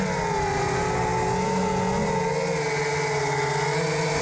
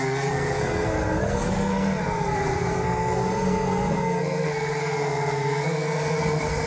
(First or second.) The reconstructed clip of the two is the second